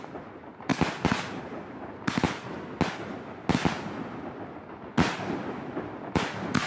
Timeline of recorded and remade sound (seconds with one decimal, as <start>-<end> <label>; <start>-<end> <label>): 0.0-6.7 recorded